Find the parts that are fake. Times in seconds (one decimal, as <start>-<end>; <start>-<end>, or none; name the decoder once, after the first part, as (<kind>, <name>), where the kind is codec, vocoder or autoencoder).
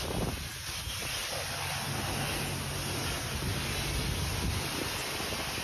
none